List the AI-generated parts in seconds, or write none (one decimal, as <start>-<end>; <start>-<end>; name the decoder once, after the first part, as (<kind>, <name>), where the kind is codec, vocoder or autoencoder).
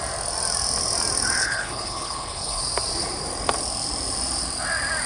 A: 1.4-2.6 (codec, HILCodec)